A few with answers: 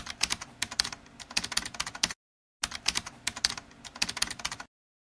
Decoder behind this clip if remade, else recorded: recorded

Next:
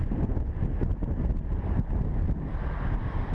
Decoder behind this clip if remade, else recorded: recorded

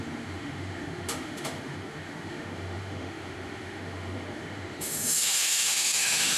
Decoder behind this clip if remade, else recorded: remade, autoencoder, DAC-VAE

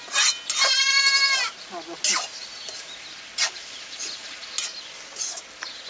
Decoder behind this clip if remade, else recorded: recorded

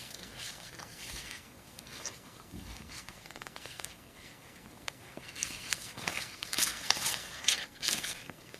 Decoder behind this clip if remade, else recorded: remade, codec, SNAC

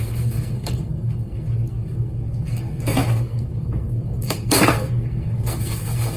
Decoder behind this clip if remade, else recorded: remade, codec, SNAC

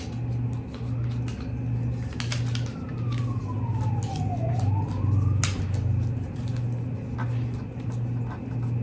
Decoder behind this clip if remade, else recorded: recorded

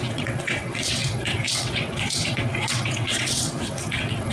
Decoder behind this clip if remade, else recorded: remade, vocoder, WaveNeXt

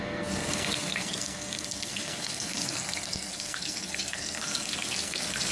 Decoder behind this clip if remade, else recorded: remade, codec, SNAC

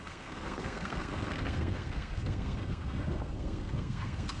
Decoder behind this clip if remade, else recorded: remade, codec, SNAC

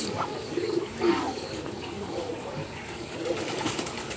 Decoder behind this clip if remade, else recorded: remade, codec, DAC